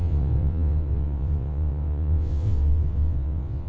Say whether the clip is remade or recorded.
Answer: remade